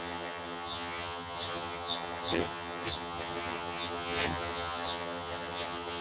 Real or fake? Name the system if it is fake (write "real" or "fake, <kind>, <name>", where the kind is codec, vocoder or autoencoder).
fake, vocoder, HiFi-GAN